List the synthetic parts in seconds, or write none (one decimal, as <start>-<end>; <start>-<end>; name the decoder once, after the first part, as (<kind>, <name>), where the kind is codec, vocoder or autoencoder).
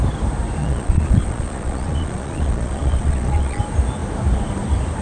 0.6-3.6 (vocoder, Vocos)